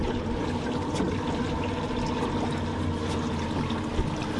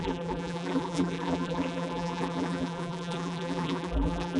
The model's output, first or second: second